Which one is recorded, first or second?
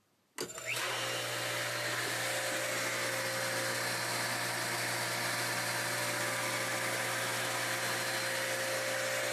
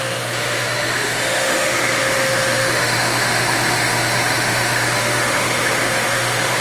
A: first